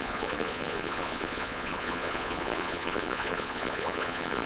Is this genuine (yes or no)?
no